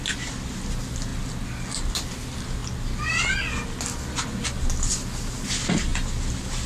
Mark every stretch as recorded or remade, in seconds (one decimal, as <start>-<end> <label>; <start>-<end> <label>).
0.0-6.7 recorded